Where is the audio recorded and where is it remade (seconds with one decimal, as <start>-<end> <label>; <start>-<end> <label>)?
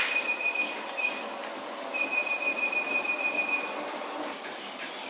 0.0-5.1 recorded